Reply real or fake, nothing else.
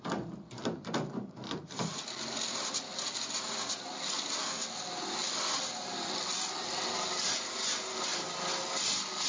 real